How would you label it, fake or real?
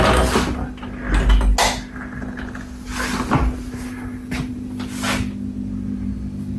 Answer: real